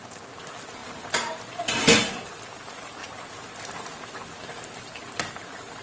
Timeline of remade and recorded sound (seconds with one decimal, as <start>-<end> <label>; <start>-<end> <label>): 0.0-5.8 recorded